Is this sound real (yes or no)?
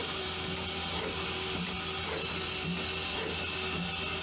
yes